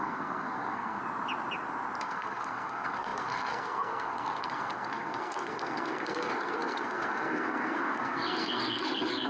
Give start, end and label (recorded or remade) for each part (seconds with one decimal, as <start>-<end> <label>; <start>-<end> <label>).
0.0-1.0 remade; 1.0-2.0 recorded; 2.0-9.3 remade